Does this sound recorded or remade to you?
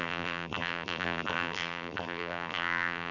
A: remade